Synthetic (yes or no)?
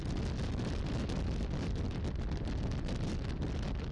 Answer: yes